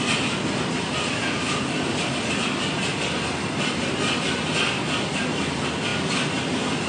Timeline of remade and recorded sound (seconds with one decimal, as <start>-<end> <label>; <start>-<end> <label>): 0.0-6.9 recorded

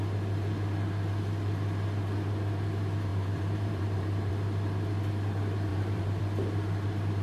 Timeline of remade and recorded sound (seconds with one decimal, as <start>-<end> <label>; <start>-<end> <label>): 0.0-3.1 recorded; 3.1-4.3 remade; 4.3-5.7 recorded; 5.7-6.2 remade; 6.2-7.2 recorded

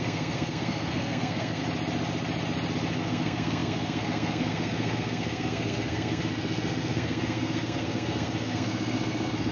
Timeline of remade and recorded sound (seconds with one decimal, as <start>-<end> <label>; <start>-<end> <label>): 0.0-1.6 remade; 1.6-3.0 recorded; 3.0-9.5 remade

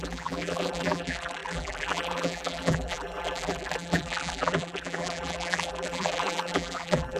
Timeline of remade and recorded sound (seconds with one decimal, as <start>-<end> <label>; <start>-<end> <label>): 0.0-7.2 remade

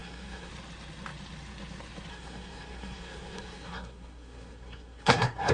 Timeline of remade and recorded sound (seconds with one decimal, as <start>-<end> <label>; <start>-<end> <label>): 0.0-0.5 remade; 0.5-2.1 recorded; 2.1-5.5 remade

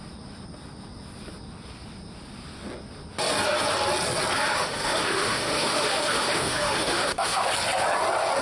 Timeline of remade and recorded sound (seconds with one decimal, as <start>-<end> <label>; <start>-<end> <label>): 0.0-4.5 recorded; 4.5-7.5 remade; 7.5-8.4 recorded

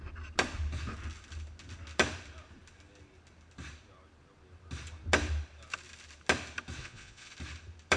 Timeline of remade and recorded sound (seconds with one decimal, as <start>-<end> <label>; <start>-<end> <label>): 0.0-6.8 recorded; 6.8-7.3 remade; 7.3-8.0 recorded